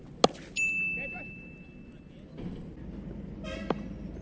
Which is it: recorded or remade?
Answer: recorded